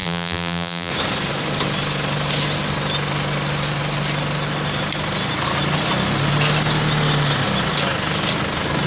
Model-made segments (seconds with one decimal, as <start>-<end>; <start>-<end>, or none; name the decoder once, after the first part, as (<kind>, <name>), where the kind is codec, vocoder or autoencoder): 0.0-0.9 (vocoder, BigVGAN v2)